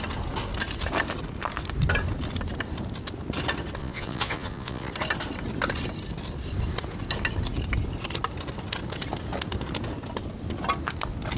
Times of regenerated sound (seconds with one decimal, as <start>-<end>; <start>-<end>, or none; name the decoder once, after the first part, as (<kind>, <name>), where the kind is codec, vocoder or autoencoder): 3.8-4.9 (vocoder, Vocos)